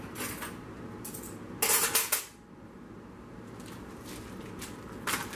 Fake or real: real